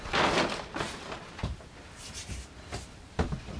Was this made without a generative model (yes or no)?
yes